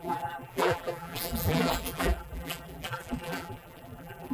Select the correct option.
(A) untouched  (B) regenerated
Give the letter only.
B